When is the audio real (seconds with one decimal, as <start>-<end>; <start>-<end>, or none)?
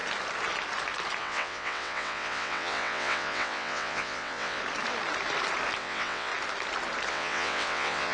0.0-1.2; 4.6-5.8; 6.3-7.1